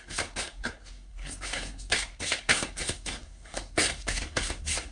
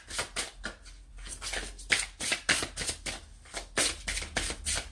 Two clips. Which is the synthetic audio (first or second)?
first